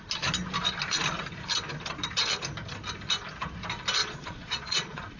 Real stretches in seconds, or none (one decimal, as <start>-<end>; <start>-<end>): 0.0-4.0